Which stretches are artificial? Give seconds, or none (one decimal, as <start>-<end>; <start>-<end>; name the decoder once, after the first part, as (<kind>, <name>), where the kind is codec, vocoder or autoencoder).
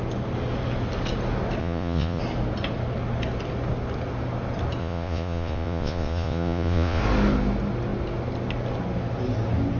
1.6-2.2 (vocoder, Vocos); 4.8-7.0